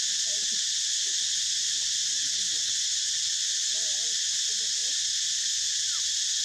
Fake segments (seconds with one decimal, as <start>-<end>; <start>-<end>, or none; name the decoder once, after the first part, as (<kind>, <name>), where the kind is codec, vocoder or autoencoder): 1.4-3.3 (vocoder, BigVGAN v2); 4.8-6.0